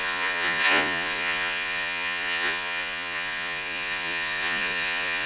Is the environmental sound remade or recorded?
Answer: remade